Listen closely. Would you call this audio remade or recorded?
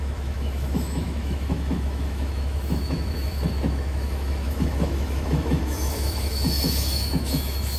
remade